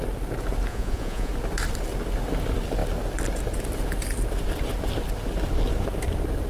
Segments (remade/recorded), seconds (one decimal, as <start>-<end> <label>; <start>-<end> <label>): 0.0-0.7 recorded; 0.7-1.3 remade; 1.3-6.5 recorded